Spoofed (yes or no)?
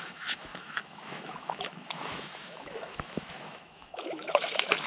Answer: yes